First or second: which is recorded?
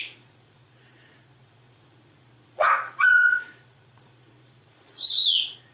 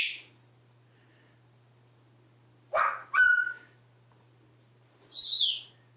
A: second